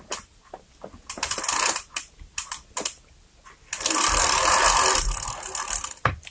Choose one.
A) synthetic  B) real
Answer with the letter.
A